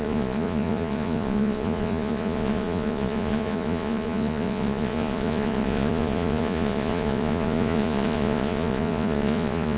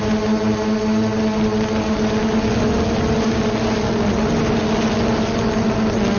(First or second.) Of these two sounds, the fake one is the first